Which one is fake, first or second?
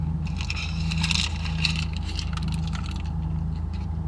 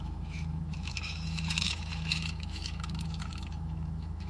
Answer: second